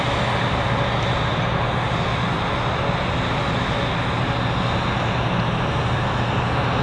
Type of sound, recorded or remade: recorded